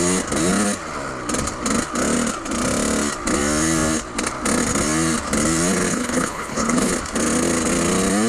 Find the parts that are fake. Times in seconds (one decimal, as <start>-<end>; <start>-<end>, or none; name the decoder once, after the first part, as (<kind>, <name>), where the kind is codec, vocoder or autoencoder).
5.9-6.9 (codec, HILCodec)